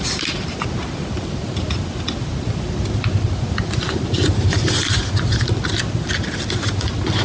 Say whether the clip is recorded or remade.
recorded